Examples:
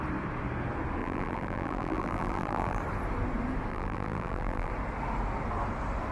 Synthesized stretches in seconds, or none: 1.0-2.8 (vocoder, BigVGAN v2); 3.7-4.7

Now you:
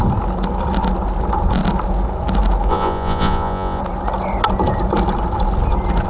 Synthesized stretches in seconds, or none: 2.7-3.8 (vocoder, Vocos)

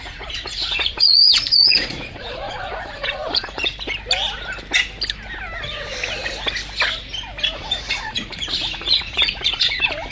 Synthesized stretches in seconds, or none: 0.0-3.7 (vocoder, Vocos); 7.5-10.1

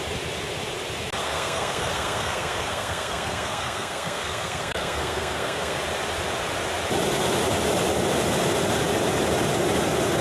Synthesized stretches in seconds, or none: 1.2-5.8 (codec, SNAC)

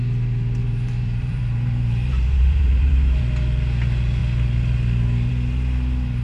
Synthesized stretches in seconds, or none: 0.6-3.2 (vocoder, BigVGAN v2)